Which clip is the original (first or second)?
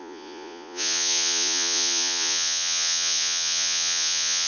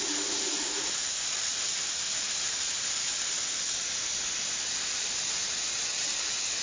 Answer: second